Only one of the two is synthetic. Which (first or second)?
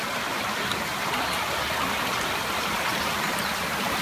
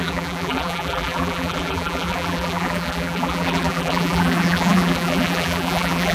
second